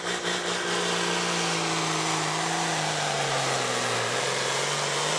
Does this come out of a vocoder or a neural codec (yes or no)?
no